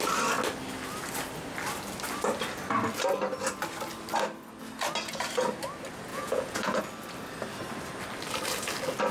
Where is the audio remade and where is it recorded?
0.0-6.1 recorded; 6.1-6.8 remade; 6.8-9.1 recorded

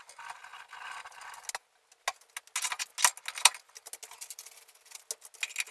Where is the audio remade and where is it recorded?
0.0-5.7 recorded